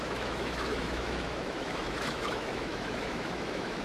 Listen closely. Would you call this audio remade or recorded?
remade